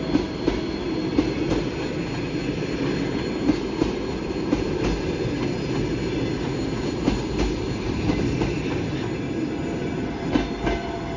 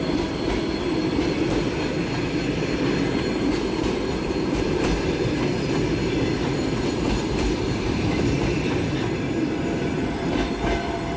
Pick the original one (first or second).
first